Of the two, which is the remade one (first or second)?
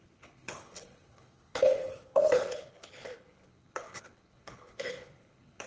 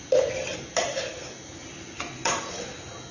first